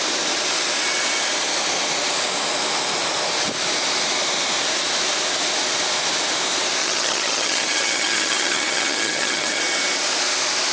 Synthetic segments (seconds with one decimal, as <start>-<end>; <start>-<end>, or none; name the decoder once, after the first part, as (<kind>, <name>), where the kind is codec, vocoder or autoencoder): 6.8-9.6 (vocoder, HiFi-GAN)